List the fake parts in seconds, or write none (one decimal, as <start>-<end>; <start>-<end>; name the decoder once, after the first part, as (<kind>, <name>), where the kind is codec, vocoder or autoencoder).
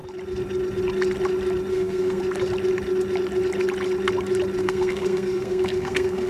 1.7-2.2 (codec, SNAC); 4.6-6.3